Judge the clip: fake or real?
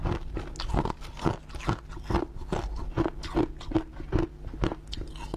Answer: real